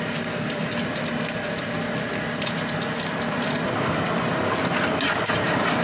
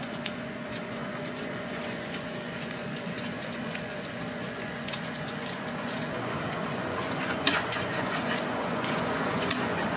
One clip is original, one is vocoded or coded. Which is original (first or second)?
first